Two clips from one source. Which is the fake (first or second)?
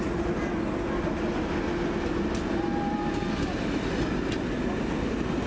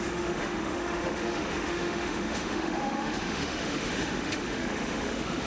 second